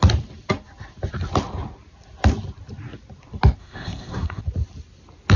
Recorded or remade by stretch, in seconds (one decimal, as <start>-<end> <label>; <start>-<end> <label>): 0.0-3.6 recorded; 3.6-4.4 remade; 4.4-5.4 recorded